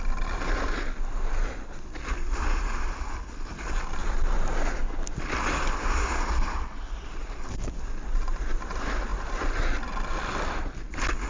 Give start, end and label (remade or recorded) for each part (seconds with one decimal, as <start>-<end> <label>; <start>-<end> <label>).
0.0-11.3 recorded